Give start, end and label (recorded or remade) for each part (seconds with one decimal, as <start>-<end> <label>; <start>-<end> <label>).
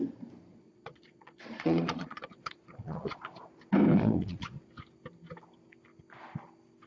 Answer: 0.0-0.5 recorded; 0.5-3.3 remade; 3.3-3.9 recorded; 3.9-4.5 remade; 4.5-6.9 recorded